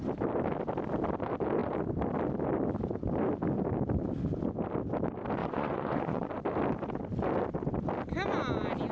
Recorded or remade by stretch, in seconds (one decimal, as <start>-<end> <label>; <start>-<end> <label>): 0.0-5.4 recorded; 5.4-6.3 remade; 6.3-8.9 recorded